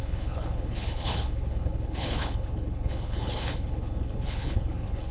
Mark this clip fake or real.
fake